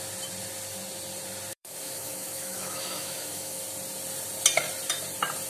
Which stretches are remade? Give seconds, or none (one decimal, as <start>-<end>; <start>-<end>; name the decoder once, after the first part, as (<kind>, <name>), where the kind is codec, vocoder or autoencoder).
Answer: 1.5-3.6 (autoencoder, DAC-VAE)